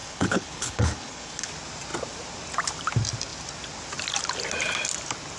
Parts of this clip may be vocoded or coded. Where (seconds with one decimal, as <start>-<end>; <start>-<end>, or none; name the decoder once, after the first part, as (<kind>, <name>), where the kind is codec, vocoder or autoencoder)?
0.0-1.5 (codec, HILCodec)